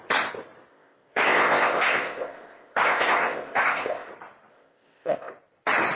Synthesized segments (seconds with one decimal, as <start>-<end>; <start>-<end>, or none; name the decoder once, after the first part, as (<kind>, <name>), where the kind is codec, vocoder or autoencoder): 0.7-4.1 (codec, ZipCodec); 4.5-5.3